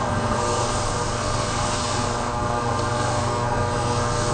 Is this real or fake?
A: fake